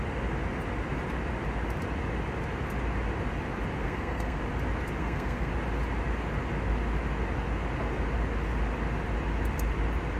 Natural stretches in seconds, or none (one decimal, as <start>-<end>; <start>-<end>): 0.0-3.8; 4.4-5.0; 5.5-10.2